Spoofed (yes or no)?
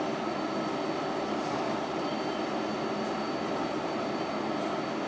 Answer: no